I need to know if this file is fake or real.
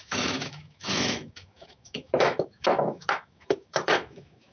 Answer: fake